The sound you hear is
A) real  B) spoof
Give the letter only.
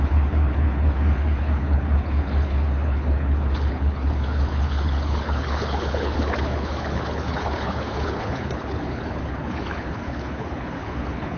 B